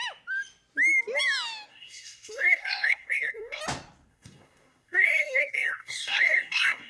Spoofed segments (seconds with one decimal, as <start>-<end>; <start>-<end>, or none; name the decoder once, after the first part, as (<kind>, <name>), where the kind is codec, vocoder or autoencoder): 1.7-3.6 (codec, SNAC); 4.1-6.9